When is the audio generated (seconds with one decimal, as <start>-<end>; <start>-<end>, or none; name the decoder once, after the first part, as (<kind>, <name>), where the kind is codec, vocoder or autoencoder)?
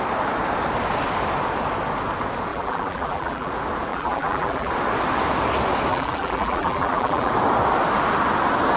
2.5-3.5 (vocoder, BigVGAN v2); 3.9-4.7; 5.9-7.3